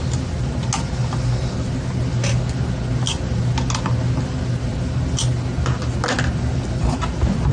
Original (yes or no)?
yes